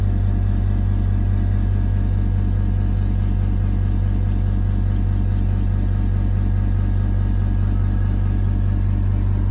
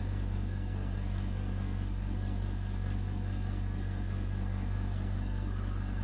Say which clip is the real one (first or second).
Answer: first